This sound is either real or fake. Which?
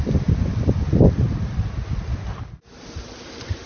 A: real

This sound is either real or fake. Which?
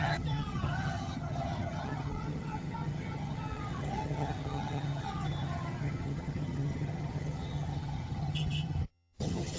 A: fake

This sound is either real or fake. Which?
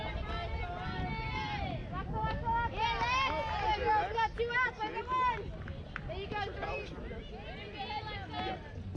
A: real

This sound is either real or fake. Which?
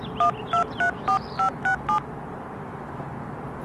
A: real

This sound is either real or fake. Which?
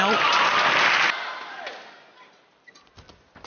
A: real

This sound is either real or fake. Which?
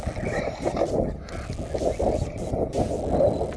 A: real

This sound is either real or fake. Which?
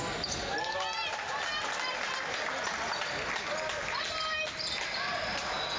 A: real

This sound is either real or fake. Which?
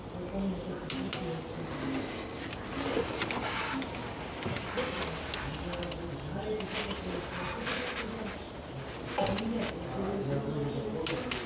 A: real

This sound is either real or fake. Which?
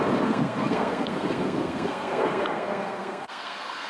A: fake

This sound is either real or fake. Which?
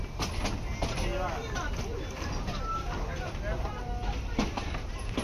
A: real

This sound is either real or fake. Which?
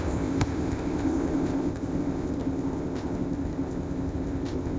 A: fake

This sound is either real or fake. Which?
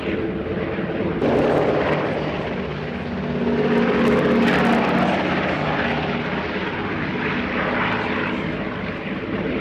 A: real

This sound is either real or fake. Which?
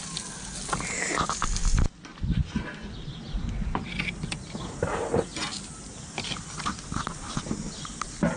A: real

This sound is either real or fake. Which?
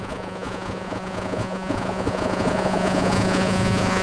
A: fake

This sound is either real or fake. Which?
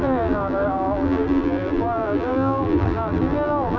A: fake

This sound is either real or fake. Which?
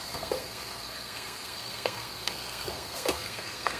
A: fake